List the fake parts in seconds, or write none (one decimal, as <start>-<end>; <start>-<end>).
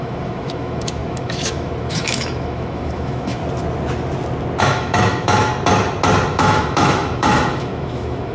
0.0-3.4; 4.6-5.5; 6.3-8.3